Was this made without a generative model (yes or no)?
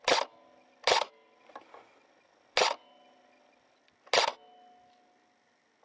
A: yes